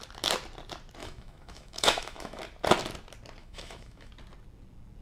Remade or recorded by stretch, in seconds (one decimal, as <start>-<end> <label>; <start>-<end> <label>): 0.0-1.0 recorded; 1.0-2.4 remade; 2.4-3.4 recorded; 3.4-4.1 remade; 4.1-5.0 recorded